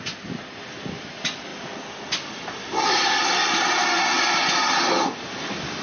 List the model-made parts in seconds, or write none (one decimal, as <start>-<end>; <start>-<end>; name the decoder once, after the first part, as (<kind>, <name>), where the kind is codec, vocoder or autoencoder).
none